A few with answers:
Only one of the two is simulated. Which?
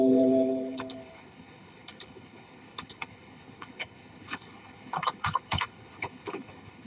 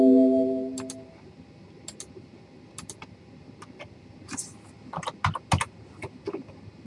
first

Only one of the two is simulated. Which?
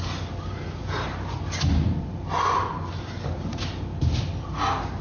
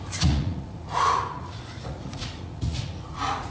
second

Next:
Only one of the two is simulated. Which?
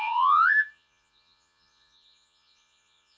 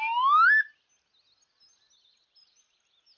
first